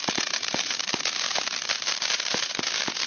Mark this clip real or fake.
fake